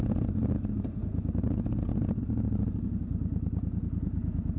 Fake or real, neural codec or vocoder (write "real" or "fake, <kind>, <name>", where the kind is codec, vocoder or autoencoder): real